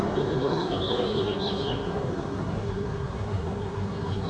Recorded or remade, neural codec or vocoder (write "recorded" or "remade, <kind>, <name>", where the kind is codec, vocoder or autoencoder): remade, codec, SNAC